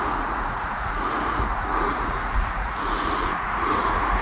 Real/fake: fake